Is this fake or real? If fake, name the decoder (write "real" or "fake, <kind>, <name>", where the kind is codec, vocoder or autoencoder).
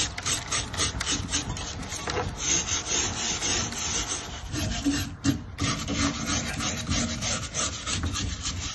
real